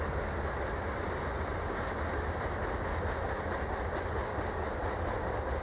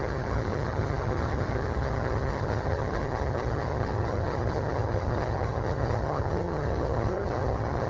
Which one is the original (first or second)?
first